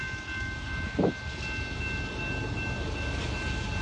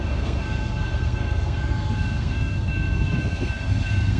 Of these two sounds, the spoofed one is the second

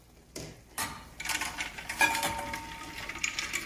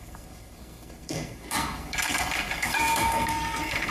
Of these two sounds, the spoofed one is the second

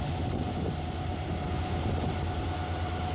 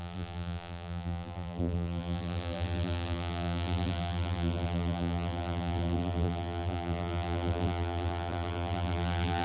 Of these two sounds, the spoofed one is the second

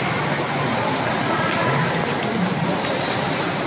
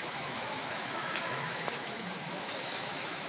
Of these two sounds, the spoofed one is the second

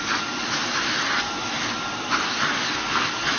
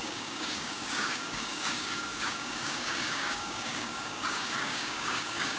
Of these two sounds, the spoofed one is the second